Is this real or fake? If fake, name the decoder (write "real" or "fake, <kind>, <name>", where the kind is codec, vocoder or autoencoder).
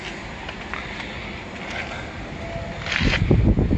real